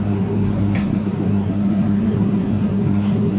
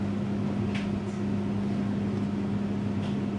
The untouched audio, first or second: second